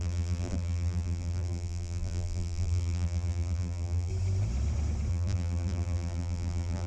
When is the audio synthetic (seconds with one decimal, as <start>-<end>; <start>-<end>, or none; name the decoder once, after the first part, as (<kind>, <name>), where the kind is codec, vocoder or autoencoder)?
0.0-4.1 (vocoder, BigVGAN v2); 5.1-6.9